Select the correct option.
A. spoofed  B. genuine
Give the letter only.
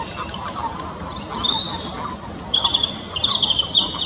B